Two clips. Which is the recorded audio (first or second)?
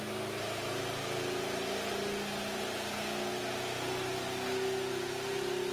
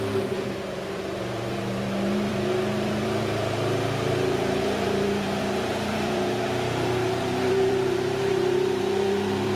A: first